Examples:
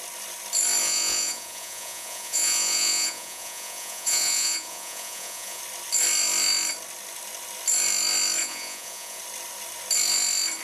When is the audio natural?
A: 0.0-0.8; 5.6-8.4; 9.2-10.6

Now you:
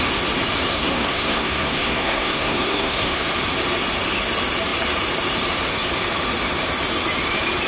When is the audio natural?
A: 0.0-0.7; 3.3-7.7

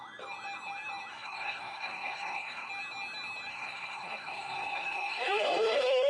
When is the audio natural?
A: 0.0-1.1; 2.7-3.5

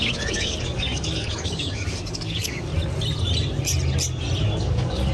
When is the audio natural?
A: 2.7-4.4

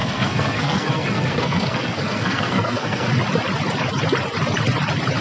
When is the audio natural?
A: 3.1-5.2

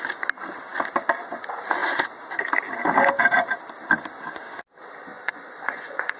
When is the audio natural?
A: 0.0-5.1